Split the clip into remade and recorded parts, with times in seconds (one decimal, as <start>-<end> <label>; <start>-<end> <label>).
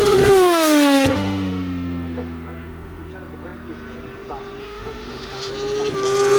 0.0-3.1 remade; 3.1-4.6 recorded; 4.6-5.5 remade; 5.5-6.4 recorded